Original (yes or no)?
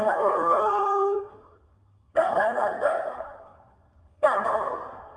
no